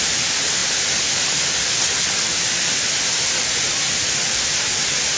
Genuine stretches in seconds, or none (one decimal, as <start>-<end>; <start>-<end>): 0.0-5.2